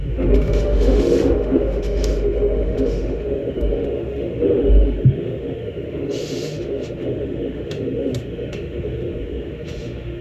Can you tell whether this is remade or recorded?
remade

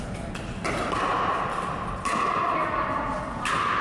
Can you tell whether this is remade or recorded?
recorded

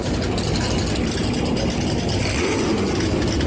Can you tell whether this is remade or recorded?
recorded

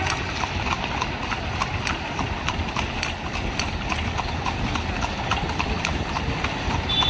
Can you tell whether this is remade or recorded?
recorded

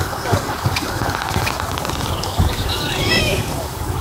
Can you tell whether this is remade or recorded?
remade